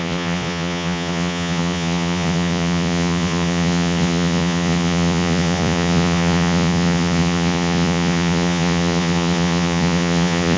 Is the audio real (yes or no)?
no